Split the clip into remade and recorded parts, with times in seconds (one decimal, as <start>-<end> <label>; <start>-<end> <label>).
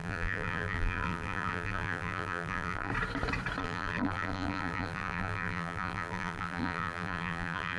0.0-2.9 remade; 2.9-3.6 recorded; 3.6-7.8 remade